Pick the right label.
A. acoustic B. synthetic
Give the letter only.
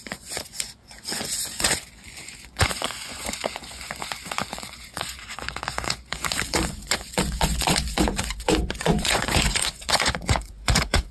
B